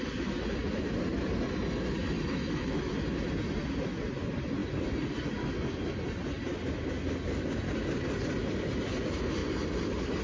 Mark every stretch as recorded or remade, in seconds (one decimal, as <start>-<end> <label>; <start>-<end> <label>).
0.0-2.3 recorded; 2.3-2.9 remade; 2.9-10.2 recorded